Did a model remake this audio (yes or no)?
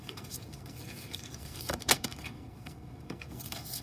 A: yes